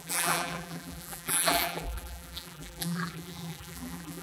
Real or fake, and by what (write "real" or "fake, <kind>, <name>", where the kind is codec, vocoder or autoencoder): fake, vocoder, BigVGAN v2